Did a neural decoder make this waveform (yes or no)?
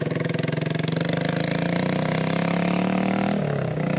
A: no